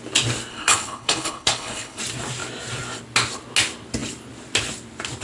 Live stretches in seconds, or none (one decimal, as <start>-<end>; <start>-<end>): 0.0-0.5; 2.0-5.2